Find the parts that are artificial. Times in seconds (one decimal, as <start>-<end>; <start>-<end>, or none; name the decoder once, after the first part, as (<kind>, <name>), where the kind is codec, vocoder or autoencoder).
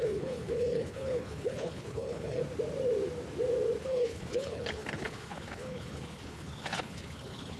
0.0-2.4 (codec, HILCodec); 3.8-7.6